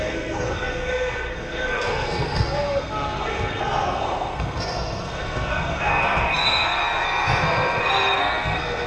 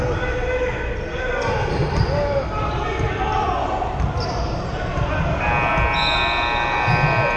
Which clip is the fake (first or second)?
first